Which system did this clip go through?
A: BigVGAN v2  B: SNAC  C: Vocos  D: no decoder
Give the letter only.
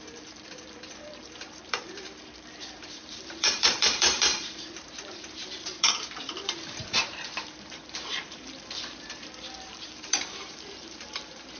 A